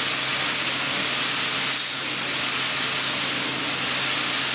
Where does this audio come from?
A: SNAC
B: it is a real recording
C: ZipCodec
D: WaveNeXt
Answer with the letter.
B